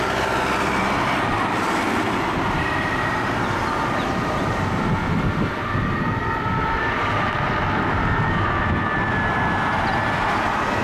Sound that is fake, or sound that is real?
real